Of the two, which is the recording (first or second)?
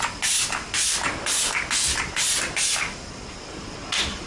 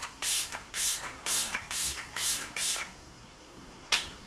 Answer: first